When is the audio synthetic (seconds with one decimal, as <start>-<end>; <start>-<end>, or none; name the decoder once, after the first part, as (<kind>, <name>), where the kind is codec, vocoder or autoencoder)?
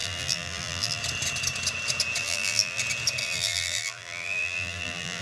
0.0-1.0 (vocoder, BigVGAN v2); 2.2-2.8; 3.2-5.2